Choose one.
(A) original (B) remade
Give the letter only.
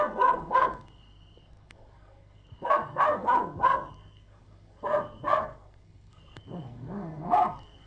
B